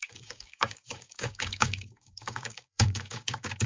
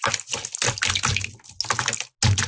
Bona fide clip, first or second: second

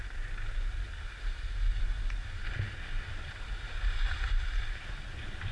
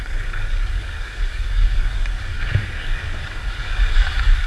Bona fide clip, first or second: first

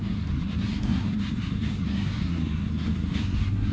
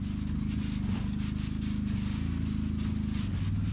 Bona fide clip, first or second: second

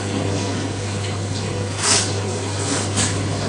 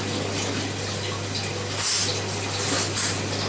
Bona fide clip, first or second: second